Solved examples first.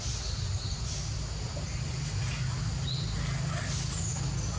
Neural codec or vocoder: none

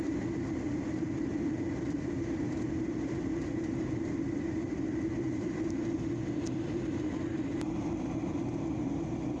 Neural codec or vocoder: vocoder, BigVGAN v2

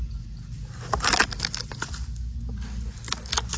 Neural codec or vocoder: none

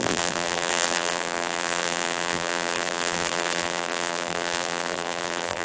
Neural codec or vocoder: vocoder, BigVGAN v2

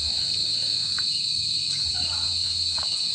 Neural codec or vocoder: autoencoder, DAC-VAE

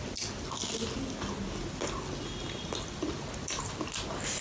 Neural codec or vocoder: none